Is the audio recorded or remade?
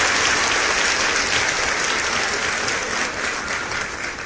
recorded